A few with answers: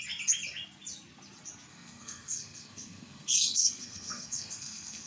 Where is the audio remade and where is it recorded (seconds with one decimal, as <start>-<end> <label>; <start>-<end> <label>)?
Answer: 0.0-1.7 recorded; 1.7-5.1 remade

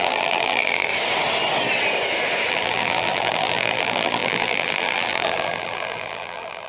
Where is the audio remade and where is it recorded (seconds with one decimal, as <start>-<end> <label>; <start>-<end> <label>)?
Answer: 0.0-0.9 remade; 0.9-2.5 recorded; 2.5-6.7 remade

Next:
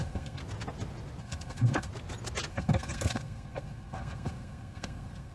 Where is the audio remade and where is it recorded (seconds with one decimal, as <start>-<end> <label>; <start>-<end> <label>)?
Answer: 0.0-0.4 remade; 0.4-1.2 recorded; 1.2-1.9 remade; 1.9-2.5 recorded; 2.5-5.3 remade

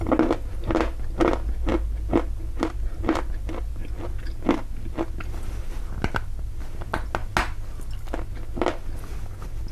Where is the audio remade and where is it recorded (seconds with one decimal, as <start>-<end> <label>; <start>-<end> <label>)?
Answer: 0.0-9.7 recorded

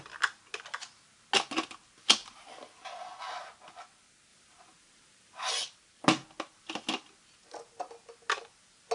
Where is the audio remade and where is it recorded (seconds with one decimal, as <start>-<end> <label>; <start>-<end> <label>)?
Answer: 0.0-2.2 recorded; 2.2-3.2 remade; 3.2-4.3 recorded; 4.3-5.5 remade; 5.5-8.9 recorded

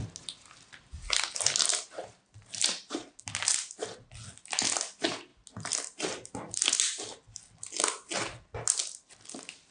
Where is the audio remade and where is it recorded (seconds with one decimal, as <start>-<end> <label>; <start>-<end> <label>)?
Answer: 0.0-2.0 recorded; 2.0-3.2 remade; 3.2-9.7 recorded